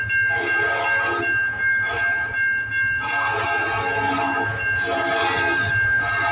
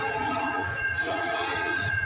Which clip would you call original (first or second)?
first